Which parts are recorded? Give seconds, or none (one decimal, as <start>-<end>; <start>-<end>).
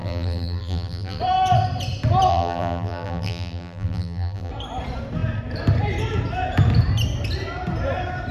1.2-2.3; 4.5-8.3